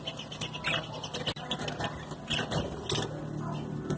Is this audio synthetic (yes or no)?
no